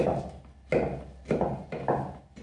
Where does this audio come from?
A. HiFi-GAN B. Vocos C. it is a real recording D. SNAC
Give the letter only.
C